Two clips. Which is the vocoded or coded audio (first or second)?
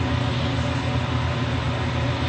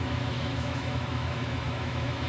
second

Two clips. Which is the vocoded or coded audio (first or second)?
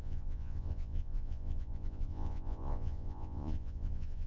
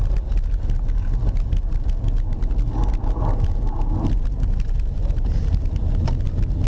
first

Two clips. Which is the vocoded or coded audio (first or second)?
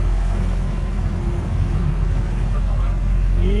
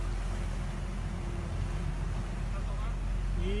first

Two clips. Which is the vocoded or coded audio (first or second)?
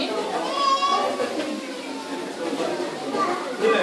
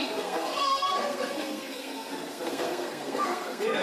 second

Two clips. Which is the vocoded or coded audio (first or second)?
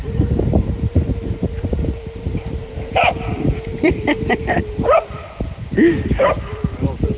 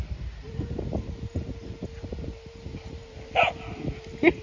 first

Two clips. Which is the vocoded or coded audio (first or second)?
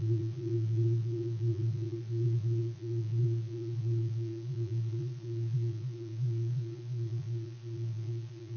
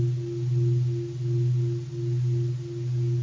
first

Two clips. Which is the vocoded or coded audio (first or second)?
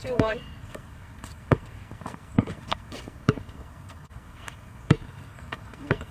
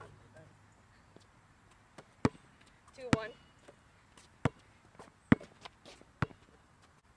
first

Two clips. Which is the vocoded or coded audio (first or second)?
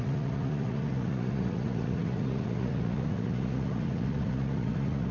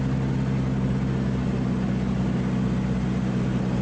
first